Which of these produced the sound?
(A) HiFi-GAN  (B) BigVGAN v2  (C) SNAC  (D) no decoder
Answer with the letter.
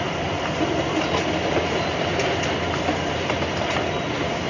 D